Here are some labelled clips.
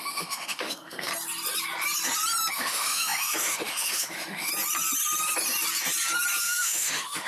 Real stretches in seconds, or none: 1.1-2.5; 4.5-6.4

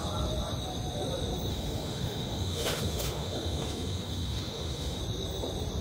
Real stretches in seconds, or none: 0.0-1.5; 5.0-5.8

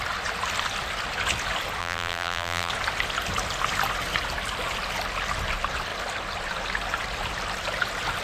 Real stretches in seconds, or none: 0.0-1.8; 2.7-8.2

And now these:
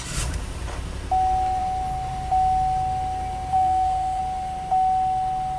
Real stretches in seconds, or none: 0.0-3.5; 4.2-5.6

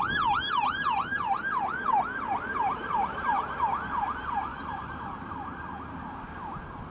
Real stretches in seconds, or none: 0.0-6.9

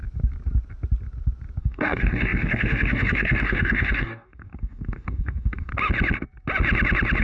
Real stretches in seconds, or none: 0.0-1.6; 5.7-7.2

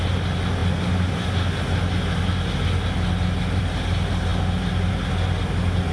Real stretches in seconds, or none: 0.0-5.9